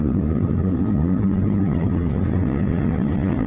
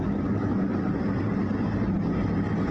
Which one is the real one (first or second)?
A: second